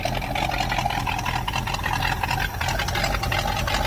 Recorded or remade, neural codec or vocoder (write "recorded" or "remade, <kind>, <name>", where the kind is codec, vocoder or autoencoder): recorded